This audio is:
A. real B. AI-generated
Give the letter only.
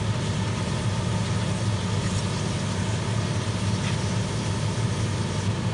A